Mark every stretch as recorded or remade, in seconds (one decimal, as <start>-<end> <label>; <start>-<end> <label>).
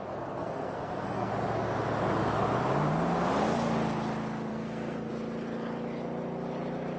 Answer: 0.0-1.3 remade; 1.3-4.5 recorded; 4.5-5.1 remade; 5.1-7.0 recorded